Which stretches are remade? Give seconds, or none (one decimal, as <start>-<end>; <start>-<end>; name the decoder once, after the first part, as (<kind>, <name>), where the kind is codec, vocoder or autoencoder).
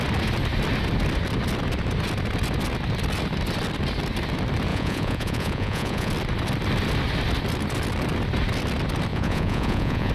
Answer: 4.7-6.1 (vocoder, Vocos); 9.1-10.1